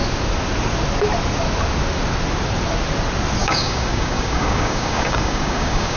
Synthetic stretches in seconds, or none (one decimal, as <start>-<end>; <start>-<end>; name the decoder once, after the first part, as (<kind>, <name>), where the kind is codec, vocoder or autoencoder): 3.4-6.0 (codec, DAC)